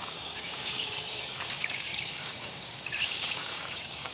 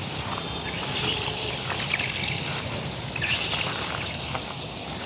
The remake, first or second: first